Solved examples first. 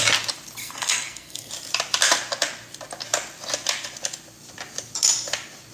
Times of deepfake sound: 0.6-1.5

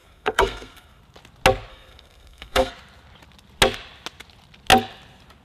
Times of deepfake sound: 0.0-1.0; 1.7-2.7

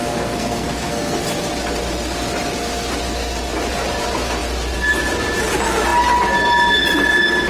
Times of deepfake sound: 0.0-1.2